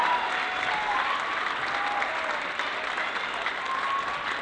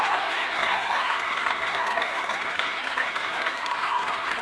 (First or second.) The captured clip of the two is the first